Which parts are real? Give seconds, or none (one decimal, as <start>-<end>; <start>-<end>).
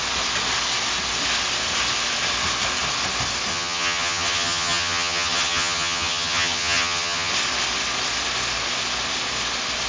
0.0-3.5; 7.3-9.9